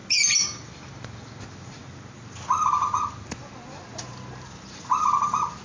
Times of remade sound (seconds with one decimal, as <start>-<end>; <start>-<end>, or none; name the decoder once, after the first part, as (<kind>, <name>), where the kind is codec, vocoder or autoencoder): none